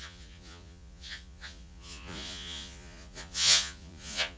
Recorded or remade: remade